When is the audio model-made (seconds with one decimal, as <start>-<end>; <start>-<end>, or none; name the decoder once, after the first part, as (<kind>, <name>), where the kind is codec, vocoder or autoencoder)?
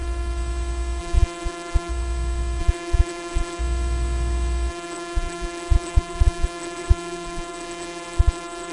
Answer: 1.0-1.9 (vocoder, BigVGAN v2); 2.6-3.6; 4.7-8.7